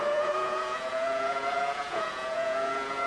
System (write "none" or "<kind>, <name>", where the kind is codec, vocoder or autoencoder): vocoder, Vocos